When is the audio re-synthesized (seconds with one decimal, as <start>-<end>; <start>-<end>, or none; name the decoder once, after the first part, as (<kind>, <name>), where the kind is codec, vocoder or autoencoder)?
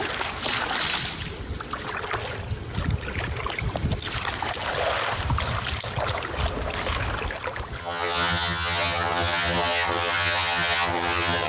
7.8-11.5 (vocoder, HiFi-GAN)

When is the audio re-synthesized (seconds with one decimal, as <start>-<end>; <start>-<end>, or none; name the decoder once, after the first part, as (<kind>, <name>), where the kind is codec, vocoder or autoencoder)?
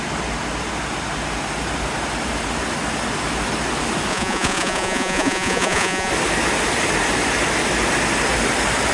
4.1-6.1 (vocoder, Vocos)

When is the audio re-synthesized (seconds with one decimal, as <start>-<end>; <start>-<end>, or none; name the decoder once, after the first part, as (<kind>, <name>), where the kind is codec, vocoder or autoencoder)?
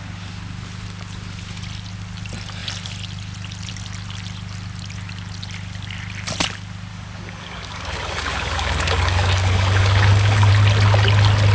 6.9-10.5 (codec, DAC)